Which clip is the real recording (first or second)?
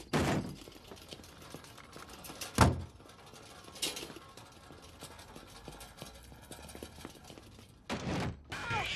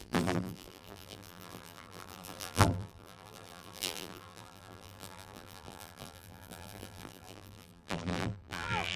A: first